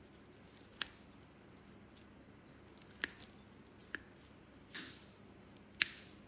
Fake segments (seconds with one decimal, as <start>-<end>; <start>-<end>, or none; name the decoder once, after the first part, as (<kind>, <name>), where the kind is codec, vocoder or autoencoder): none